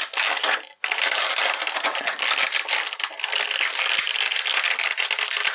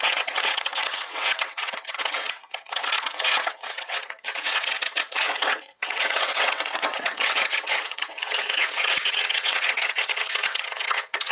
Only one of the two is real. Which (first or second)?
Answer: first